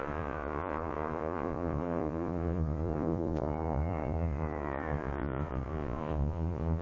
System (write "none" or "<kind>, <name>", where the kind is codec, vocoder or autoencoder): vocoder, Vocos